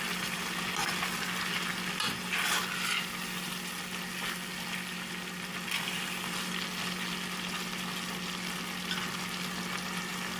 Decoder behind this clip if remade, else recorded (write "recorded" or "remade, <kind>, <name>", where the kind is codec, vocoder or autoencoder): recorded